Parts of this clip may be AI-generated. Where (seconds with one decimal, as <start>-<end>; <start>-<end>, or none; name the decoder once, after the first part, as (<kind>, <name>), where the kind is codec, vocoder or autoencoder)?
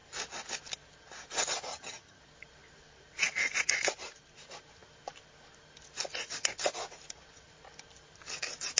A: 1.7-2.2 (vocoder, HiFi-GAN)